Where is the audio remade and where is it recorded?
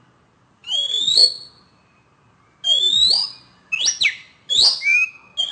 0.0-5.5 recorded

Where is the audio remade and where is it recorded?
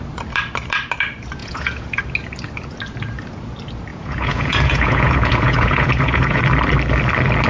0.0-1.4 recorded; 1.4-2.0 remade; 2.0-3.9 recorded; 3.9-6.4 remade; 6.4-7.5 recorded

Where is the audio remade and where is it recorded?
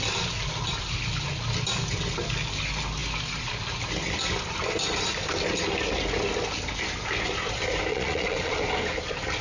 0.0-7.9 recorded; 7.9-8.6 remade; 8.6-9.4 recorded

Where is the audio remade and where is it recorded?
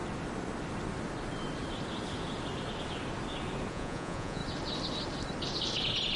0.0-3.7 recorded; 3.7-4.4 remade; 4.4-6.2 recorded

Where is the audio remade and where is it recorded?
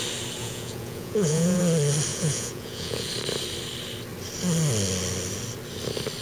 0.0-0.4 recorded; 0.4-1.6 remade; 1.6-2.1 recorded; 2.1-3.1 remade; 3.1-6.2 recorded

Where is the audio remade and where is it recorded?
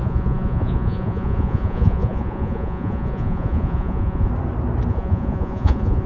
0.0-4.3 remade; 4.3-4.9 recorded; 4.9-6.1 remade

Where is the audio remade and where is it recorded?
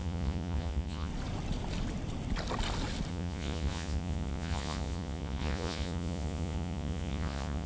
0.0-1.1 remade; 1.1-3.1 recorded; 3.1-7.7 remade